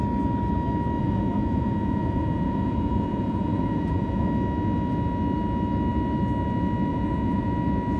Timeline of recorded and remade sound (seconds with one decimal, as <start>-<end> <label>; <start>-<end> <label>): 0.0-1.0 recorded; 1.0-4.3 remade; 4.3-6.9 recorded; 6.9-7.5 remade; 7.5-8.0 recorded